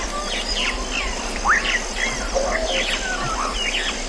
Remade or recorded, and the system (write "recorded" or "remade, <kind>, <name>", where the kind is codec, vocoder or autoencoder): recorded